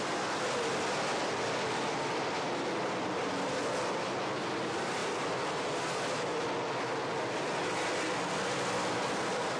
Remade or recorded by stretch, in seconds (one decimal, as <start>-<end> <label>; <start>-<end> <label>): 0.0-9.6 recorded